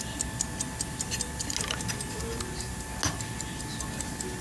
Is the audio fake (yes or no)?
no